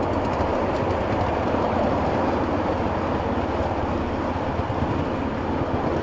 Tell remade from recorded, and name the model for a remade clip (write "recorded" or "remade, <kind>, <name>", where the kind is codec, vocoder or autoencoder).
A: recorded